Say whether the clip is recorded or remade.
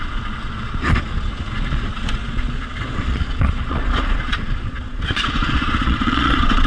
remade